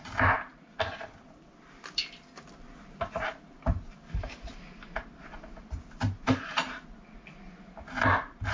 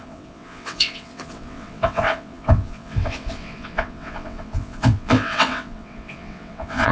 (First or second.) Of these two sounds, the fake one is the second